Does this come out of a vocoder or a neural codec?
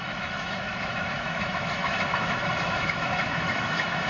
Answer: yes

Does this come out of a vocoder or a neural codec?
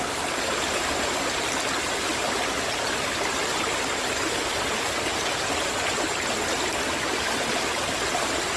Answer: no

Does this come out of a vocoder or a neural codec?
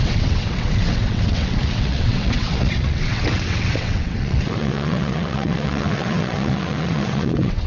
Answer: yes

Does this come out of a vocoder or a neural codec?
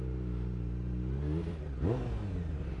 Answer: no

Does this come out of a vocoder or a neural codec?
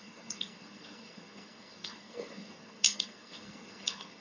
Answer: yes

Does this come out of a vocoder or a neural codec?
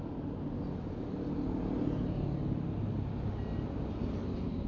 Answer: no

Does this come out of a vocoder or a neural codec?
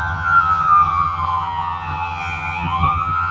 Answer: yes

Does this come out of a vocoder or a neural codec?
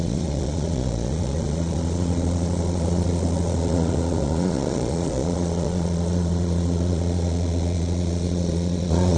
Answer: yes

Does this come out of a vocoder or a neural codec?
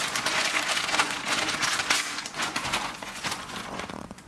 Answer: yes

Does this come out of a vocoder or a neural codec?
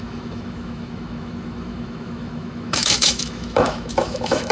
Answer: yes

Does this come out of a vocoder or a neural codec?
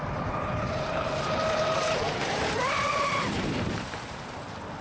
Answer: yes